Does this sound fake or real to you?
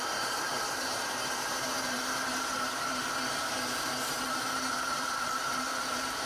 fake